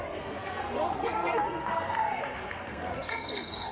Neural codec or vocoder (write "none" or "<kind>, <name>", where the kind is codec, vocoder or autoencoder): codec, SNAC